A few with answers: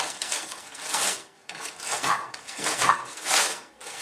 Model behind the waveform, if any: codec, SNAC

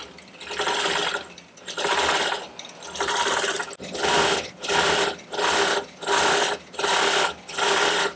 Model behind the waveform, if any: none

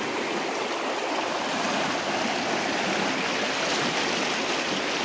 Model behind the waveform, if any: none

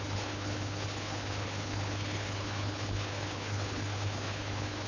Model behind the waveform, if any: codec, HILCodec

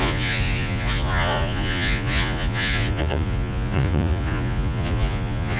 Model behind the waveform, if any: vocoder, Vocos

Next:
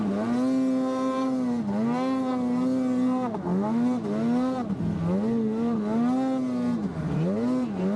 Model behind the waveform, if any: none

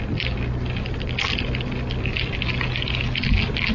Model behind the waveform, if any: none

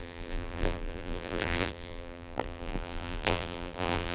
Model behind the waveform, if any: vocoder, BigVGAN v2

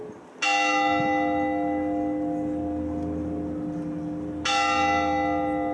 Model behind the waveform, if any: none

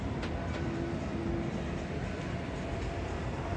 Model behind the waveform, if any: vocoder, BigVGAN v2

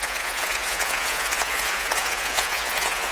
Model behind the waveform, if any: vocoder, Vocos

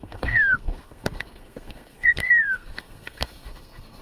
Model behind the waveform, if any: codec, SNAC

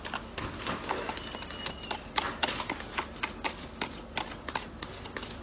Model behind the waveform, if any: none